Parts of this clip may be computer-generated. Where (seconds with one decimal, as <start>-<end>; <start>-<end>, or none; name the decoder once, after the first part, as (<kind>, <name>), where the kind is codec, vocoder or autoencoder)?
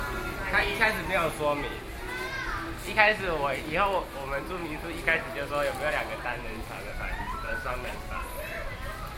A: none